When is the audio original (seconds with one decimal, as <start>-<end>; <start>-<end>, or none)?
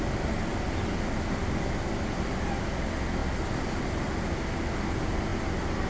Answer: 0.0-5.9